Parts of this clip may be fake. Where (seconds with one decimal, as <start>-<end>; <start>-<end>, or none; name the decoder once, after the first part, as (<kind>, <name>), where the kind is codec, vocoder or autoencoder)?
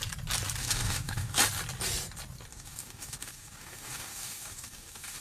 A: 0.6-1.4 (codec, DAC); 2.5-5.2